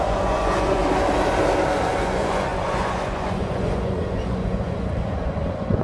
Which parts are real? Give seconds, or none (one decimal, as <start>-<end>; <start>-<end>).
0.8-1.8